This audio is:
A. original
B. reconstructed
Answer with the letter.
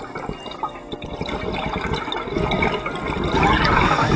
A